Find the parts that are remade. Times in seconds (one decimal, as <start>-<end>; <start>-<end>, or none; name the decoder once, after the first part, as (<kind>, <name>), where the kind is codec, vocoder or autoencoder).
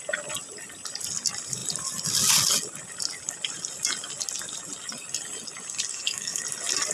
5.9-6.4 (codec, DAC)